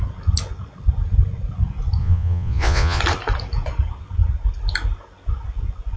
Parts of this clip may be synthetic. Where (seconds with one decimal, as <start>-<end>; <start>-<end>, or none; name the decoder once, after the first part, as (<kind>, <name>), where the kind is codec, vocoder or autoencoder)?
2.0-3.0 (vocoder, Vocos)